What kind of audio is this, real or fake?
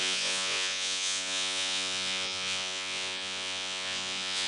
fake